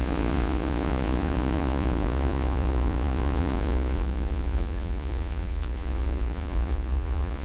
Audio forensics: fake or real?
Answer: fake